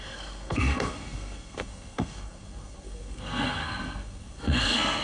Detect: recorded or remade remade